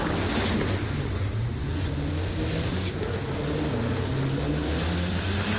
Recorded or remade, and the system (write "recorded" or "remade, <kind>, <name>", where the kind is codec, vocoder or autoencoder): recorded